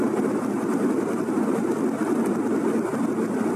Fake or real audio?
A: real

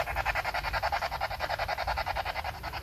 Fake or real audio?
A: real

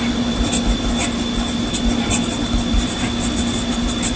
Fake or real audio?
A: real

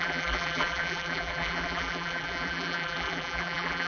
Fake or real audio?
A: fake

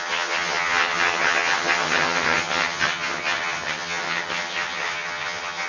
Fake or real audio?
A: fake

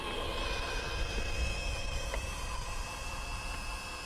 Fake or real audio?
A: real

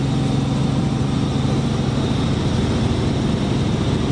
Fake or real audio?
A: real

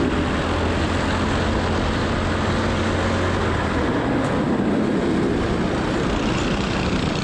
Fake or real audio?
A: real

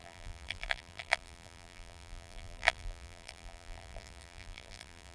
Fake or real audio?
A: fake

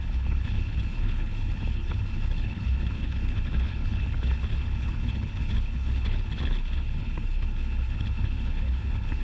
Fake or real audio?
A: fake